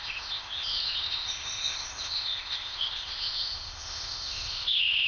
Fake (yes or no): yes